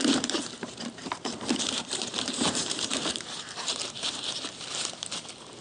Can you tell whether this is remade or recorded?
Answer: remade